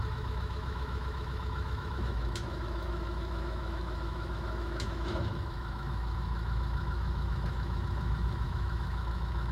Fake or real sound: fake